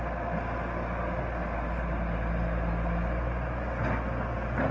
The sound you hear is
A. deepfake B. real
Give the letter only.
B